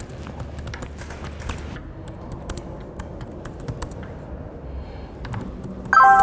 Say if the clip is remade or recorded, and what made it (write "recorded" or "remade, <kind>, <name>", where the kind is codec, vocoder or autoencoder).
recorded